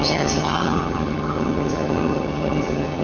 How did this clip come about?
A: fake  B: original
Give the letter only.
A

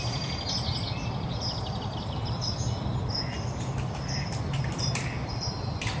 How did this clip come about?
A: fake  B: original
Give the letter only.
B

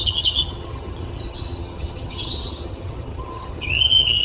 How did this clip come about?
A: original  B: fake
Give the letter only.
B